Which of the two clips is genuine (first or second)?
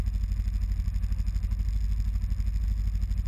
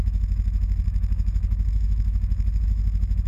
first